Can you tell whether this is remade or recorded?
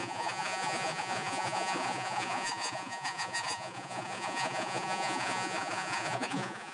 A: remade